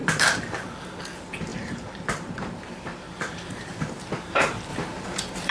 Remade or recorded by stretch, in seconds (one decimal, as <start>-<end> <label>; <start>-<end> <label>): 0.0-0.8 remade; 0.8-1.5 recorded; 1.5-4.0 remade; 4.0-4.7 recorded; 4.7-5.5 remade

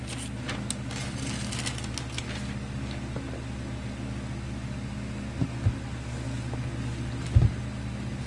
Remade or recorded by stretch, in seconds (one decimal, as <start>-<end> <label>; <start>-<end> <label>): 0.0-1.0 recorded; 1.0-1.5 remade; 1.5-8.3 recorded

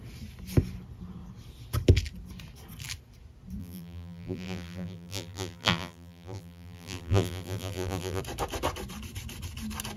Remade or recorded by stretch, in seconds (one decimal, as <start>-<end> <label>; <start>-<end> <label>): 0.0-3.6 recorded; 3.6-8.2 remade; 8.2-10.0 recorded

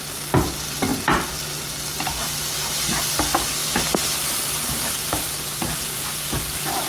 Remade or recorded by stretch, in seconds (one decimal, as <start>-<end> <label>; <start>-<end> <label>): 0.0-3.6 recorded; 3.6-6.1 remade; 6.1-6.9 recorded

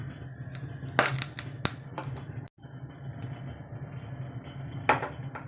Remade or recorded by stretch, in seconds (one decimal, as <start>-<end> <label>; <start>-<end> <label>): 0.0-5.5 recorded